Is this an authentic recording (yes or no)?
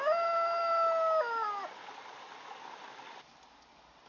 yes